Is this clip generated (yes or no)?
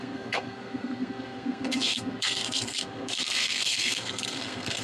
yes